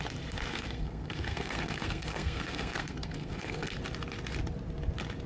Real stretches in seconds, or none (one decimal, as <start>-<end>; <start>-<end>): 0.0-0.5; 3.7-5.3